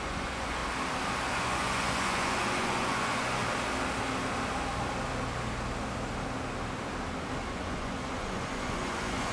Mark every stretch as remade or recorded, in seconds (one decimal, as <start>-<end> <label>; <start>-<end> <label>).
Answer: 0.0-0.6 remade; 0.6-1.3 recorded; 1.3-3.4 remade; 3.4-7.5 recorded; 7.5-9.3 remade